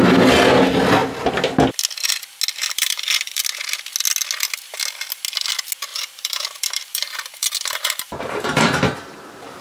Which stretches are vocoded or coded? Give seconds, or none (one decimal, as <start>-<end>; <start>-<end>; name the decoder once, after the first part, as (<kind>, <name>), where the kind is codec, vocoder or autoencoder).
2.6-3.4 (vocoder, BigVGAN v2); 5.9-9.6